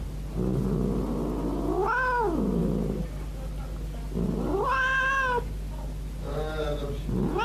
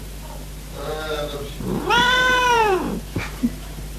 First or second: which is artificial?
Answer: second